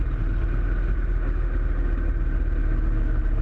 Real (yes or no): yes